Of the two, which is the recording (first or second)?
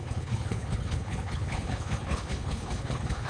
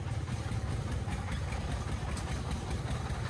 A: second